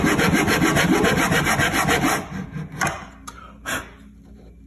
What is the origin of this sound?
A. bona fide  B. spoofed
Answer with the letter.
A